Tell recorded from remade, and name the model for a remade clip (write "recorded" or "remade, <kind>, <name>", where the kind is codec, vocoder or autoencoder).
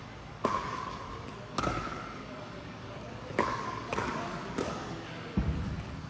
remade, codec, DAC